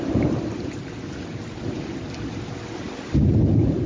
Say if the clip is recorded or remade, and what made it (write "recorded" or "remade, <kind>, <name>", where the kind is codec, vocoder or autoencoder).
recorded